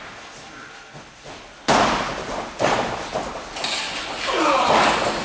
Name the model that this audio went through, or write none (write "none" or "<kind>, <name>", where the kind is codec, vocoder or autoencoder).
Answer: none